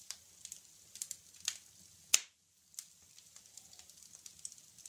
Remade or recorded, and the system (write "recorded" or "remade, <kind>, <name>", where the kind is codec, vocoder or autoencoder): recorded